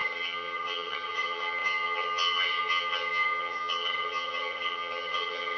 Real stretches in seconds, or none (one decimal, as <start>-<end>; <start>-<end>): none